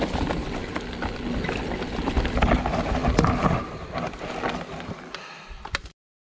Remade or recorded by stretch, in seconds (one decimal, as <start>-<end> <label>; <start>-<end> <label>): 0.0-6.4 recorded